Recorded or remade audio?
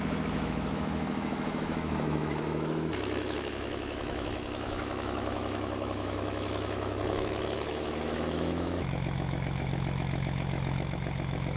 remade